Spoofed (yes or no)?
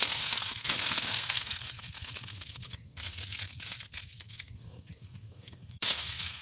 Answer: yes